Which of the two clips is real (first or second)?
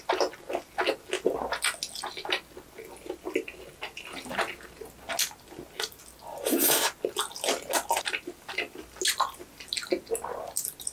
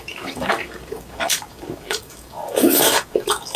first